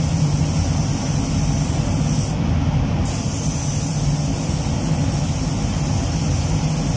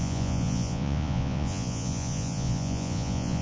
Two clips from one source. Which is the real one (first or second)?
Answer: first